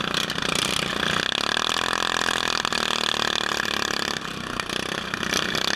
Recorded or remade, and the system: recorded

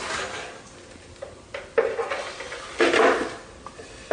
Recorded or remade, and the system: recorded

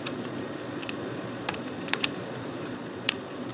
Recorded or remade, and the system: remade, vocoder, Vocos